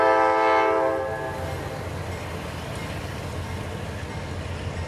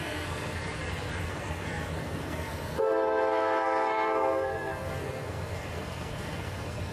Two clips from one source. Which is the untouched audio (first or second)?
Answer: first